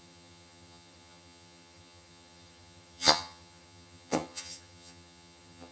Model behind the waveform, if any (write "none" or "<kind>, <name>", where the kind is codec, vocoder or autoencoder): vocoder, HiFi-GAN